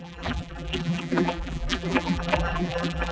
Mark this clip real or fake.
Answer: fake